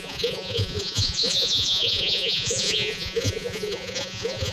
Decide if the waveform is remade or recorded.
remade